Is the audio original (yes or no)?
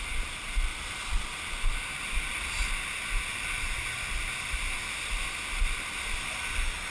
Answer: yes